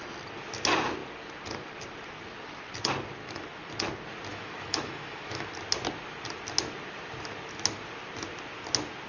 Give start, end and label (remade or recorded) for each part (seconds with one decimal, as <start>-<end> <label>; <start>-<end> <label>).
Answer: 0.0-3.2 recorded; 3.2-3.7 remade; 3.7-4.3 recorded; 4.3-5.5 remade; 5.5-9.1 recorded